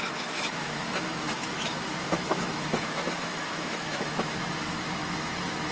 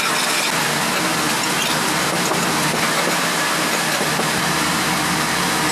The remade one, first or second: first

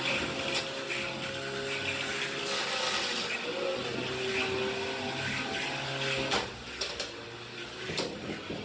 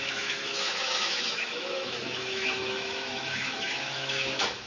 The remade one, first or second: second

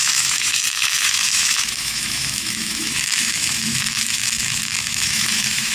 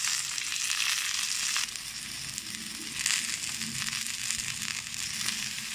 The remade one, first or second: first